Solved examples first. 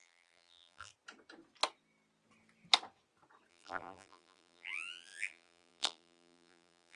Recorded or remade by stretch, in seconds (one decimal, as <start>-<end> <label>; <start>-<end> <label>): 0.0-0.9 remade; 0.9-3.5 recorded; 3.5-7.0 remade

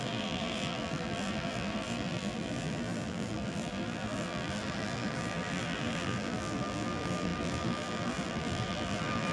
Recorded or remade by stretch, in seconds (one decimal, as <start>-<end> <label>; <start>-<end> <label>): 0.0-9.3 remade

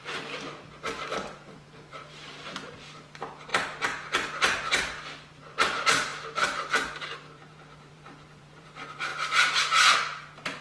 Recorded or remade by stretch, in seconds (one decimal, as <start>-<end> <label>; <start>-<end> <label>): 0.0-3.5 remade; 3.5-5.3 recorded; 5.3-9.1 remade; 9.1-10.6 recorded